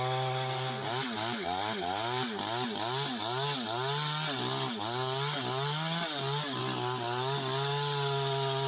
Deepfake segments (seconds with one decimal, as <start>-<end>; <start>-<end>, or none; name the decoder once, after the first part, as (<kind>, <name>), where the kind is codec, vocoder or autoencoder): none